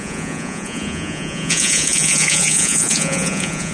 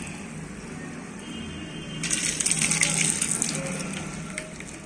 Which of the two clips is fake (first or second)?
first